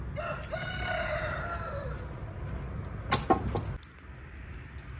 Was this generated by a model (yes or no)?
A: no